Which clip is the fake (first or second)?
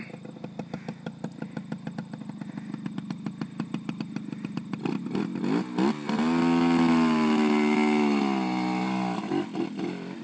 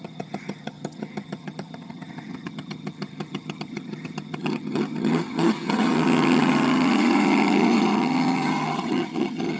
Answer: second